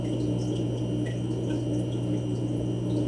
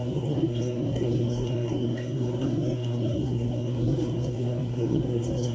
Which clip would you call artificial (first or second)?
second